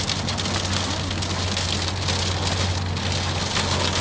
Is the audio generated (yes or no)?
no